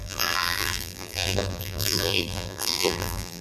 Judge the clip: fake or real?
fake